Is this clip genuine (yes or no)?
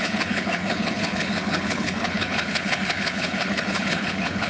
no